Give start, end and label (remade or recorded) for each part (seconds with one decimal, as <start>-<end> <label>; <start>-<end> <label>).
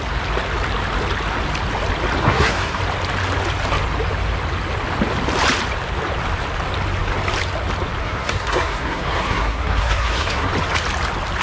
0.0-2.2 recorded; 2.2-2.8 remade; 2.8-8.0 recorded; 8.0-10.5 remade; 10.5-11.4 recorded